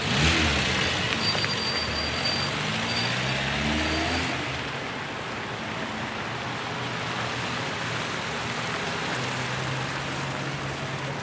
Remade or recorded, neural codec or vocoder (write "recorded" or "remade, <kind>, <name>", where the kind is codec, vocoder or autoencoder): recorded